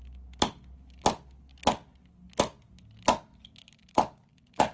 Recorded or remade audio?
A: recorded